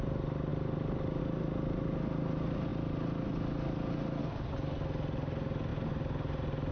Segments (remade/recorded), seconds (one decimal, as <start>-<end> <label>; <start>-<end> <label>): 0.0-6.7 recorded